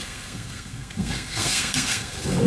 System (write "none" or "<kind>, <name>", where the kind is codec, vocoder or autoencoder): codec, SNAC